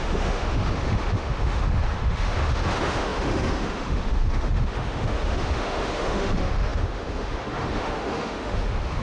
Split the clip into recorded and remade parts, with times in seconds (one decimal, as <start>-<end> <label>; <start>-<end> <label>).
0.0-9.0 remade

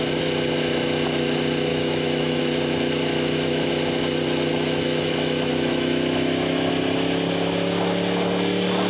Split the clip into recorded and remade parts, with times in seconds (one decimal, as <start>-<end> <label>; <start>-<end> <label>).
0.0-1.7 recorded; 1.7-2.4 remade; 2.4-3.1 recorded; 3.1-3.7 remade; 3.7-4.5 recorded; 4.5-6.7 remade; 6.7-8.9 recorded

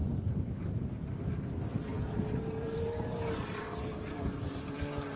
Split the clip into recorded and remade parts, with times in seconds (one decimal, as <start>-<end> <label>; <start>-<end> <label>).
0.0-1.3 remade; 1.3-1.9 recorded; 1.9-4.8 remade; 4.8-5.2 recorded

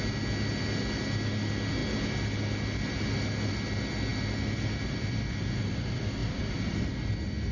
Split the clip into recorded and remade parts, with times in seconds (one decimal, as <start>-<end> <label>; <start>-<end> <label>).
0.0-6.2 recorded; 6.2-7.1 remade; 7.1-7.5 recorded

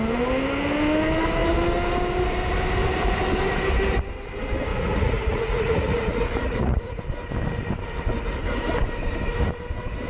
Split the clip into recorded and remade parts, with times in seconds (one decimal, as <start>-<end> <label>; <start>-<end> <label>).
0.0-4.7 recorded; 4.7-7.0 remade; 7.0-10.1 recorded

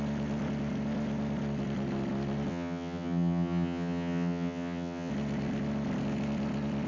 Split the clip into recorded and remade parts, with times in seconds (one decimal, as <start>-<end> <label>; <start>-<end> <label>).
0.0-2.5 recorded; 2.5-5.1 remade; 5.1-6.9 recorded

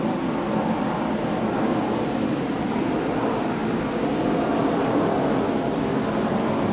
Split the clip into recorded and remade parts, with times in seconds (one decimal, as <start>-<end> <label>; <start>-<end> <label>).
0.0-6.7 recorded